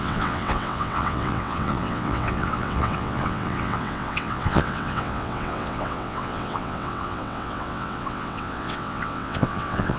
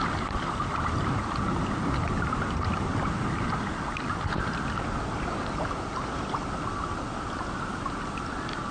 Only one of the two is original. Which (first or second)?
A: second